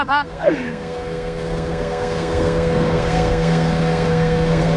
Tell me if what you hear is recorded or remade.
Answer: remade